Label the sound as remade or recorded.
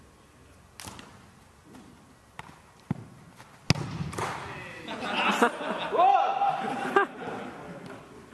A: recorded